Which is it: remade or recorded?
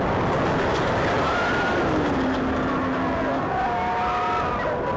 recorded